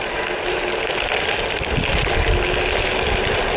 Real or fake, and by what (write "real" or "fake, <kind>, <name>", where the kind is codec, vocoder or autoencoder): real